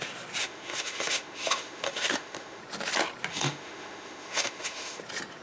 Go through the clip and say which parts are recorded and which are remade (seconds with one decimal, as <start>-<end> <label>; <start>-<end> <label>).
0.0-0.4 recorded; 0.4-2.6 remade; 2.6-3.3 recorded; 3.3-5.0 remade; 5.0-5.4 recorded